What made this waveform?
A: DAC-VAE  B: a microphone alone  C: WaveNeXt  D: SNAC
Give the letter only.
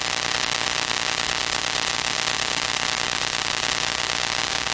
B